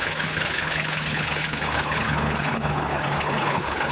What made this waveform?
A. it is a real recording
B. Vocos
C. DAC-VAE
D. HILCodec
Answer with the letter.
D